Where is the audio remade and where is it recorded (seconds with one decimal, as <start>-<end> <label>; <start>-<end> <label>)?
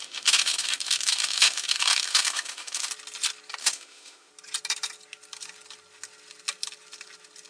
0.0-2.9 remade; 2.9-3.6 recorded; 3.6-4.3 remade; 4.3-7.5 recorded